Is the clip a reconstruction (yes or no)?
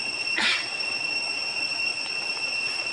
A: no